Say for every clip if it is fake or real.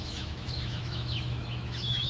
fake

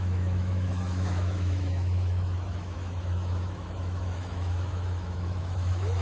fake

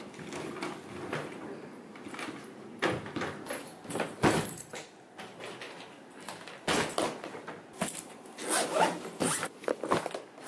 real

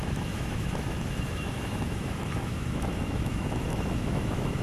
fake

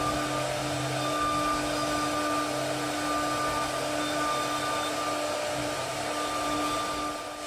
real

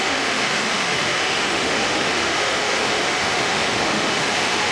fake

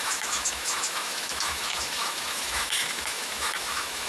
fake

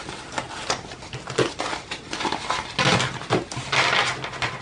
real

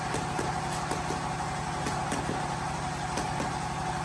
real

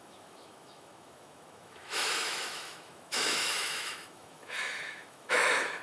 fake